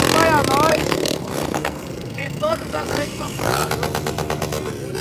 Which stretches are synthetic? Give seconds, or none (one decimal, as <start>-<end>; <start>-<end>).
0.7-3.7